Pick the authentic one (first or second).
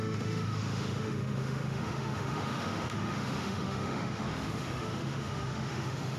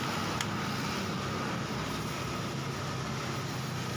second